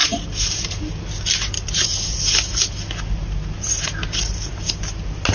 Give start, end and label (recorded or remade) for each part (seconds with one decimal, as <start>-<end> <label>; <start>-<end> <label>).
0.0-5.3 recorded

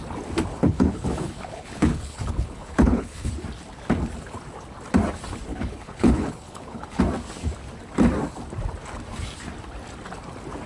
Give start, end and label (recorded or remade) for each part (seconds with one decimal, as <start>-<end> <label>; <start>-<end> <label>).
0.0-0.5 recorded; 0.5-3.3 remade; 3.3-5.5 recorded; 5.5-7.0 remade; 7.0-10.7 recorded

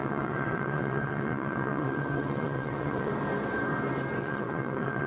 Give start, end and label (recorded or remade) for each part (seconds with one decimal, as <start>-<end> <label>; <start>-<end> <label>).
0.0-3.1 remade; 3.1-4.2 recorded; 4.2-5.1 remade